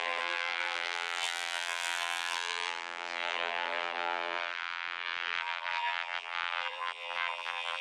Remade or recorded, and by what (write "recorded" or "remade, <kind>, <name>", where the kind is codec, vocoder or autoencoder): remade, vocoder, BigVGAN v2